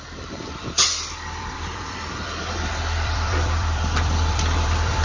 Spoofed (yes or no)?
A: yes